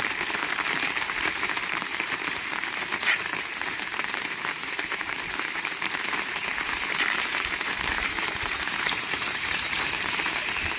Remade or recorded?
remade